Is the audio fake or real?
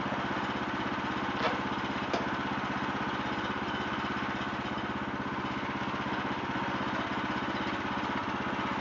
real